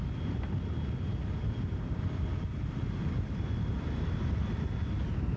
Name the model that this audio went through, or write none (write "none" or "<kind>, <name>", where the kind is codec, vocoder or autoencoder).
none